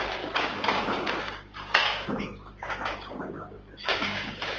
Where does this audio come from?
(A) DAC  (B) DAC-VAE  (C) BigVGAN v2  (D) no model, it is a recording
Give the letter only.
A